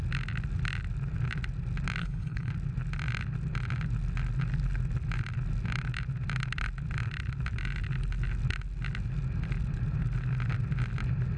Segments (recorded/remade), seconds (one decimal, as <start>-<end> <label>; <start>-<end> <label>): 0.0-2.0 recorded; 2.0-2.5 remade; 2.5-11.4 recorded